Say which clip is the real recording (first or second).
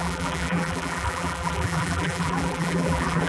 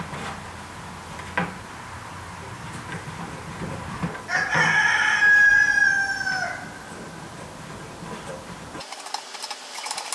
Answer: second